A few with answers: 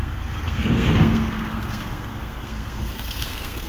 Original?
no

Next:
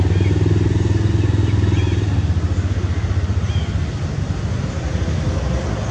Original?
yes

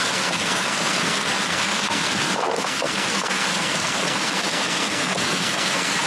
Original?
no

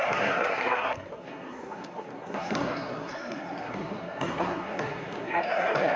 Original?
no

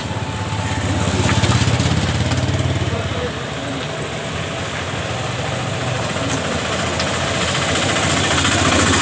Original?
yes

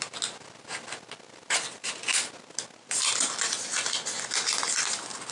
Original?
yes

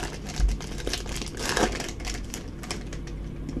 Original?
yes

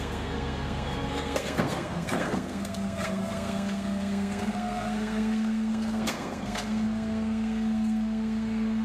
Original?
no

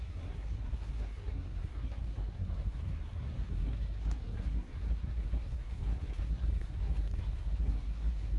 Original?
no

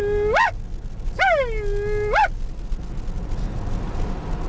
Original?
yes